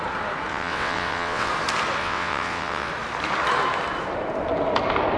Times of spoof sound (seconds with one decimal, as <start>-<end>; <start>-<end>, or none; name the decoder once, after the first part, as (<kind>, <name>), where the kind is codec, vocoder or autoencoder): 0.5-1.5 (vocoder, WaveNeXt); 2.0-2.9